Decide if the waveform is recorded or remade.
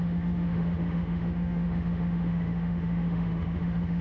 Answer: remade